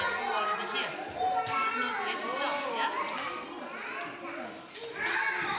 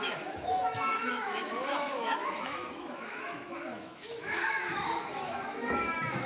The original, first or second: first